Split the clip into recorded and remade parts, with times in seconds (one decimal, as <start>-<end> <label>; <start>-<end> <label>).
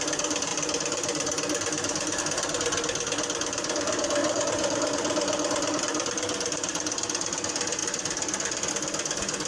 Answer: 0.0-0.5 recorded; 0.5-2.2 remade; 2.2-4.2 recorded; 4.2-5.8 remade; 5.8-7.8 recorded; 7.8-8.7 remade; 8.7-9.5 recorded